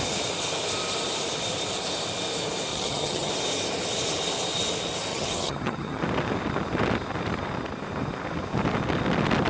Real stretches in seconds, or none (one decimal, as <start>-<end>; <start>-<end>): 0.0-2.7; 3.3-5.1; 6.0-9.5